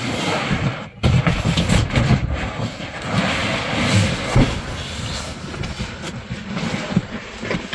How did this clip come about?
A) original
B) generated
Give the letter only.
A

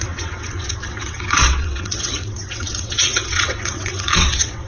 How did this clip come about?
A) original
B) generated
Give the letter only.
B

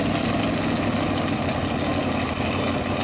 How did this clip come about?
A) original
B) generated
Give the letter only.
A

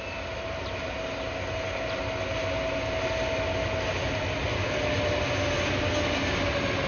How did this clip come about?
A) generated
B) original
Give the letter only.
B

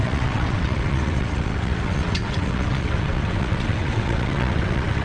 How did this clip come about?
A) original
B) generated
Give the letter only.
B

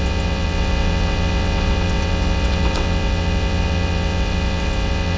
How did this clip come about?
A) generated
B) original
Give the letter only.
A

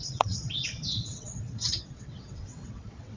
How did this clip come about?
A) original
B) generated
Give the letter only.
B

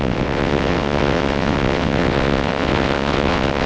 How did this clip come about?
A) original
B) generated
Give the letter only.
B